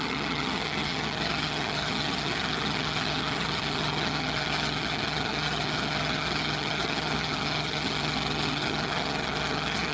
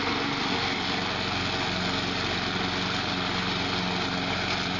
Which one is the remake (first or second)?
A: first